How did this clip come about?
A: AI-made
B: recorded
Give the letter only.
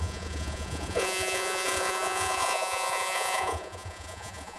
A